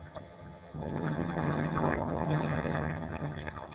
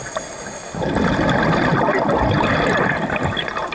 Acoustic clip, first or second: second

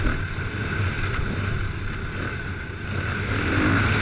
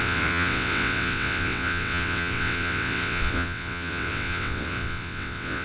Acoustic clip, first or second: first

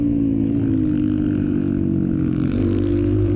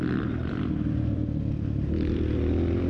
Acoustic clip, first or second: first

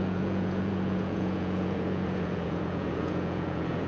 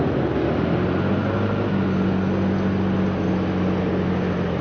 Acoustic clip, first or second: second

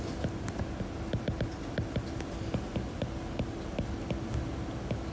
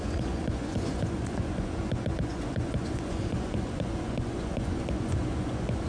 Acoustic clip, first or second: first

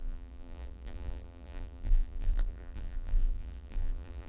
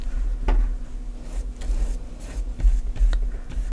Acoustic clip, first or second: second